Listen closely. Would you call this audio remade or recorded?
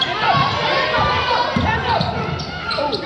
recorded